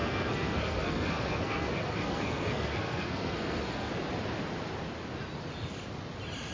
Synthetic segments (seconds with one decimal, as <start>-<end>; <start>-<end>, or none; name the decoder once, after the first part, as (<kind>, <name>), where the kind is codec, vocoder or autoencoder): 0.0-3.9 (codec, SNAC)